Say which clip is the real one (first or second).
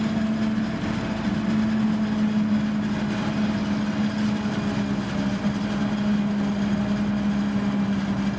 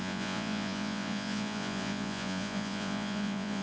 first